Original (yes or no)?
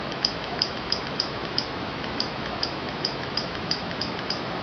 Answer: no